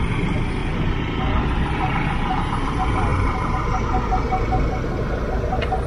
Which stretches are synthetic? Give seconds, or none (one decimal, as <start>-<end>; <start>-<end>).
none